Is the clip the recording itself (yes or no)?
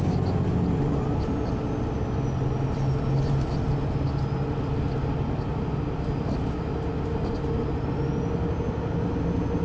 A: yes